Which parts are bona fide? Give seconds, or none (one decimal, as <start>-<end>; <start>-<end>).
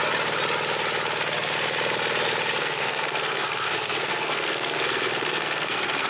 0.0-2.6